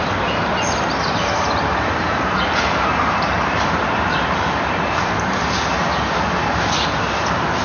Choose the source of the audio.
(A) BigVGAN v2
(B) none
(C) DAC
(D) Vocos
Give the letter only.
A